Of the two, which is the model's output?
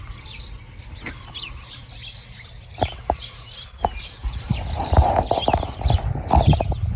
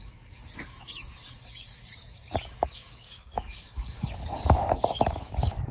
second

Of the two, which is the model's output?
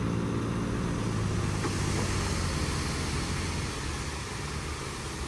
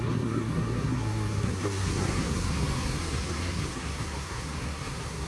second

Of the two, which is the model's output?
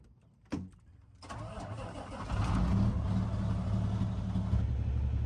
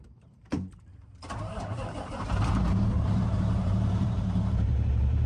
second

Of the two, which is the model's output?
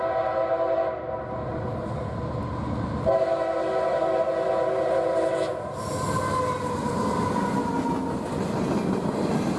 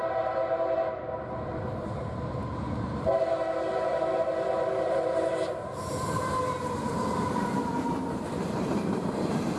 second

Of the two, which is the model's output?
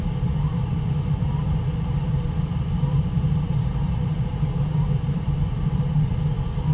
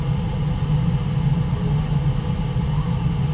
first